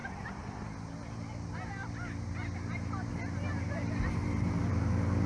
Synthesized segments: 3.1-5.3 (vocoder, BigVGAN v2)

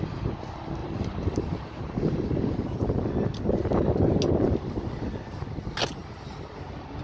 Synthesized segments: 0.8-2.5 (vocoder, BigVGAN v2); 6.0-7.0